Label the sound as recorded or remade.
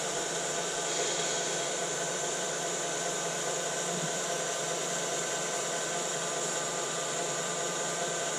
remade